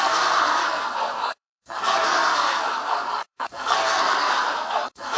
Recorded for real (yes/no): no